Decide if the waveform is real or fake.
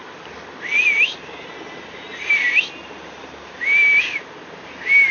real